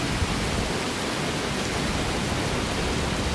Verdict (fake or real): real